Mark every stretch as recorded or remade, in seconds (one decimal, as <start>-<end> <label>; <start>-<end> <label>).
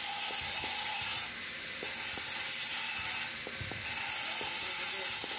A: 0.0-5.4 recorded